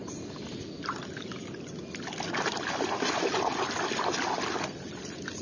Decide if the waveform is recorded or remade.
recorded